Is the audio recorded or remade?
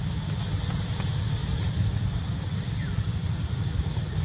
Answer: recorded